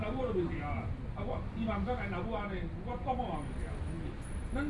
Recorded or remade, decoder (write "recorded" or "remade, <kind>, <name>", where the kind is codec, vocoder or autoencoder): recorded